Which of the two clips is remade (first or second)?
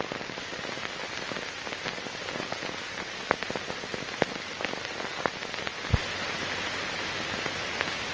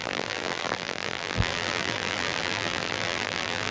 second